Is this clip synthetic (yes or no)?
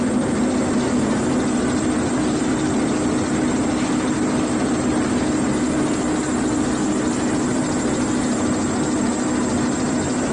no